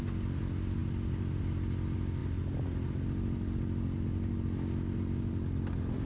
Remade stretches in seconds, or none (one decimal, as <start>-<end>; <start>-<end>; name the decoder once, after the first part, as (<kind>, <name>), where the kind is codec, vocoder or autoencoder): none